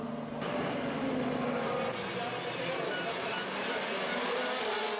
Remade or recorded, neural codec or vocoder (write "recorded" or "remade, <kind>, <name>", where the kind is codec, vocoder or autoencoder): recorded